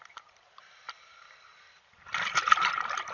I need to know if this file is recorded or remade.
remade